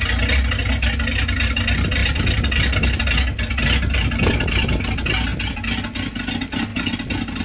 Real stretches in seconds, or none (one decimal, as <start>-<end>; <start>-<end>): 0.0-7.4